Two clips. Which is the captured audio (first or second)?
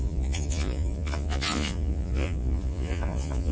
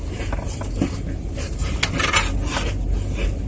second